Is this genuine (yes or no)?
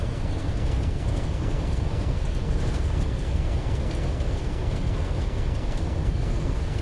no